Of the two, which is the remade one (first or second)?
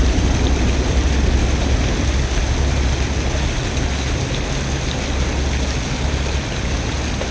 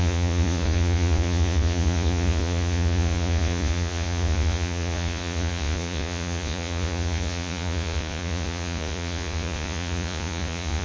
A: second